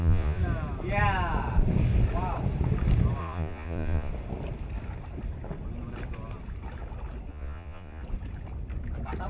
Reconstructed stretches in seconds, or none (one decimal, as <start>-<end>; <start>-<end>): 0.0-0.4; 3.2-4.1; 7.3-8.0